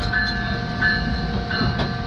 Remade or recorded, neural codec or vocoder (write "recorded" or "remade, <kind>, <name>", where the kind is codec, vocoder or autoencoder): recorded